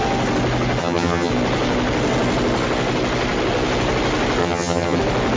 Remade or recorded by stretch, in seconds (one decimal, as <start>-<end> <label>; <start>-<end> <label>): 0.0-0.8 recorded; 0.8-1.3 remade; 1.3-4.4 recorded; 4.4-5.0 remade; 5.0-5.4 recorded